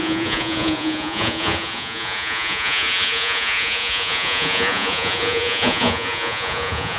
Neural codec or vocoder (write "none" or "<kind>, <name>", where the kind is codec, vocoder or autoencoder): vocoder, Vocos